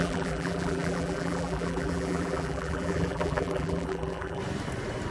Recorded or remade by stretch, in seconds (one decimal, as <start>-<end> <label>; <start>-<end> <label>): 0.0-4.4 remade; 4.4-5.1 recorded

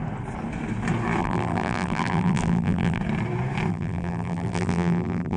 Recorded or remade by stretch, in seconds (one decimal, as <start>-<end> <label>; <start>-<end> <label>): 0.0-1.2 recorded; 1.2-3.0 remade; 3.0-3.7 recorded; 3.7-5.4 remade